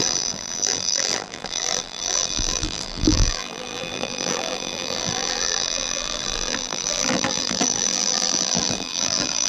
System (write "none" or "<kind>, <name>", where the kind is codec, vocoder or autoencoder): vocoder, BigVGAN v2